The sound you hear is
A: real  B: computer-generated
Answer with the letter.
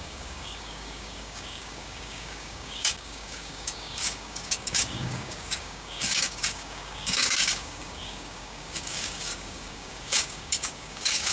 B